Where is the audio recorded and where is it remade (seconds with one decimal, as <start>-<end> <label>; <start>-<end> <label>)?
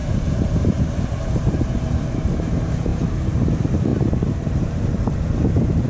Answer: 0.0-2.4 remade; 2.4-2.9 recorded; 2.9-3.5 remade; 3.5-3.9 recorded; 3.9-4.9 remade; 4.9-5.9 recorded